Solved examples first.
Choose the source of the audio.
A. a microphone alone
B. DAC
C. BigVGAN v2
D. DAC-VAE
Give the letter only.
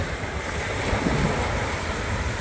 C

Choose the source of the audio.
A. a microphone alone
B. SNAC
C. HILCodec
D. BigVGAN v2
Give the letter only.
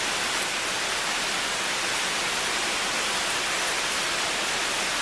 A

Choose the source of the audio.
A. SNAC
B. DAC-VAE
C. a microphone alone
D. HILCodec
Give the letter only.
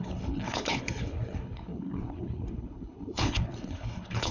D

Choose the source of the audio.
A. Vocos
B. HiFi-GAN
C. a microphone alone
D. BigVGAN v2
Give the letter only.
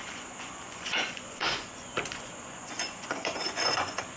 A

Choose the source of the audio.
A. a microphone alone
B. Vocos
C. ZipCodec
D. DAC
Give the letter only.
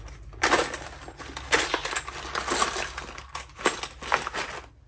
A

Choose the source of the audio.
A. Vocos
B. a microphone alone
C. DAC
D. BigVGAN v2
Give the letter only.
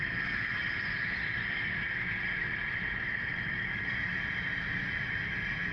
B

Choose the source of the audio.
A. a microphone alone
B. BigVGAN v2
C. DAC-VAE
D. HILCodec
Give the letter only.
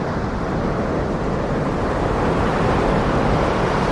A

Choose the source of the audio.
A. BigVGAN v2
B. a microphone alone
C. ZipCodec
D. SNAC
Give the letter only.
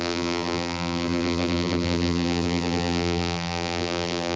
A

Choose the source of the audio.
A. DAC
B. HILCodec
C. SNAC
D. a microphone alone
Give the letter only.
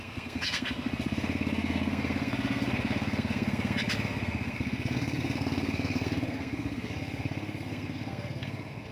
C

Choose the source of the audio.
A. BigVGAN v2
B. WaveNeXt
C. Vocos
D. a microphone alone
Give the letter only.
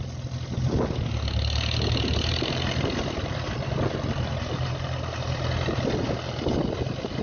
D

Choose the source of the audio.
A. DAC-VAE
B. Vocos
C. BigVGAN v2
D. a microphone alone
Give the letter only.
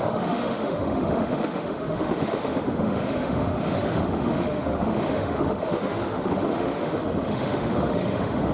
A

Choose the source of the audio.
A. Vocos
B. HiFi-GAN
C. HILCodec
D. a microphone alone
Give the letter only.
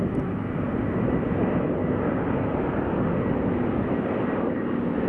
D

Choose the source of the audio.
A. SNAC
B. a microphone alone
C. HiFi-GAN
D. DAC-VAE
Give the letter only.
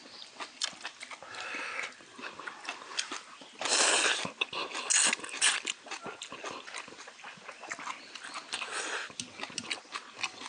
B